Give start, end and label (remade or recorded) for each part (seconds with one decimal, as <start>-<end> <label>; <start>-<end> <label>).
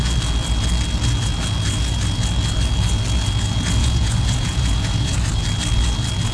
0.0-3.8 recorded; 3.8-5.3 remade; 5.3-6.3 recorded